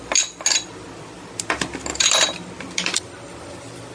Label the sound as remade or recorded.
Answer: recorded